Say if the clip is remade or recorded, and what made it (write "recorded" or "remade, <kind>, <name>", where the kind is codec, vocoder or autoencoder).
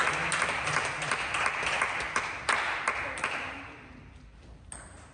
recorded